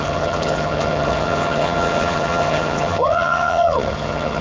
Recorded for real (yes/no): no